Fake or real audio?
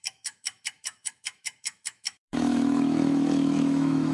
fake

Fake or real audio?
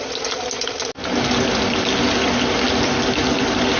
real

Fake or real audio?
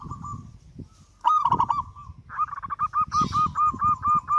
real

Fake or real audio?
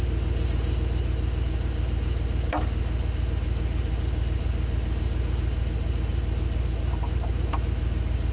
real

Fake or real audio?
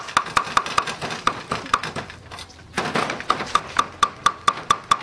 real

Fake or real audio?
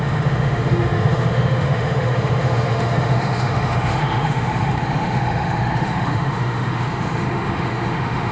fake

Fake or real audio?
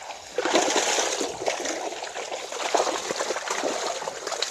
real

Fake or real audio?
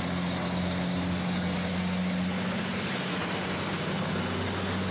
real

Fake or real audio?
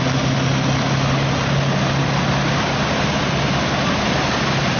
real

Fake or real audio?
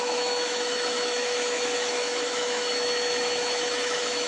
fake